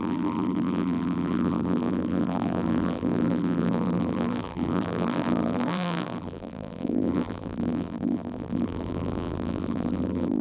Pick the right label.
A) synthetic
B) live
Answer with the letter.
A